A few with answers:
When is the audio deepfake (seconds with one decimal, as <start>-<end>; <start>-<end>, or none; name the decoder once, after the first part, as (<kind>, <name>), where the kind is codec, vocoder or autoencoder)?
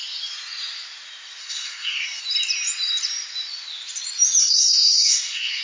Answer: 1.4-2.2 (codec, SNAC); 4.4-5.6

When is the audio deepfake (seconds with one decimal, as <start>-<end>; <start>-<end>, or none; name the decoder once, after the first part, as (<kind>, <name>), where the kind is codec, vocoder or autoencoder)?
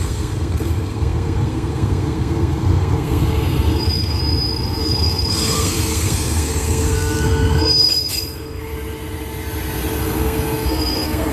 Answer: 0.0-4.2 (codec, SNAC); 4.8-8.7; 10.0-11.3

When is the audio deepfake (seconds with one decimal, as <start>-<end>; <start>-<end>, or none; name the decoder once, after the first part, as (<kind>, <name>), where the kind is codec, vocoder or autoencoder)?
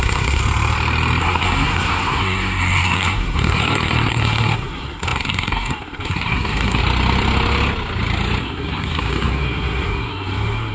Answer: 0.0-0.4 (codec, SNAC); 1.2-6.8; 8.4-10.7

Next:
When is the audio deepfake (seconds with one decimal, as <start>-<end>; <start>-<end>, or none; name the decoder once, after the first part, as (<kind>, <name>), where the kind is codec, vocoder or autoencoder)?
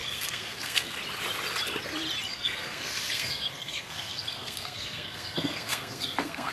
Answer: 0.0-1.0 (codec, SNAC); 2.3-6.5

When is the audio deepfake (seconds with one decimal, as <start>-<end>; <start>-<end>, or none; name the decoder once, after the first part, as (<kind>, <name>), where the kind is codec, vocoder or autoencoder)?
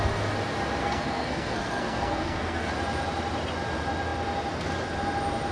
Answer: 0.8-2.7 (codec, SNAC)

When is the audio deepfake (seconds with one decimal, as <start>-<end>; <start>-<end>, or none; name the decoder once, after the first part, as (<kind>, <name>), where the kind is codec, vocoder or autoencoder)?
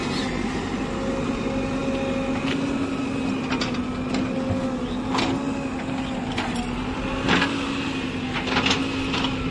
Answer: none